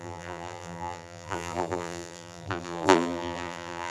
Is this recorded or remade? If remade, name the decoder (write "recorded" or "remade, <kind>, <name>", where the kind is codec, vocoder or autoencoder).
remade, vocoder, BigVGAN v2